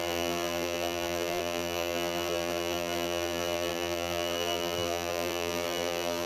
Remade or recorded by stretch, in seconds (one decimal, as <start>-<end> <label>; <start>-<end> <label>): 0.0-6.3 remade